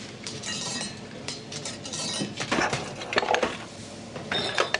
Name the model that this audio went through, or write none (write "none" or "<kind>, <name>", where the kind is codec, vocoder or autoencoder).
vocoder, BigVGAN v2